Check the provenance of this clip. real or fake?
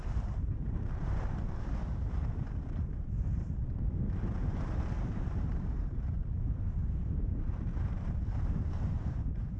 fake